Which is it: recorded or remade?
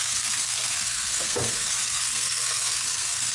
remade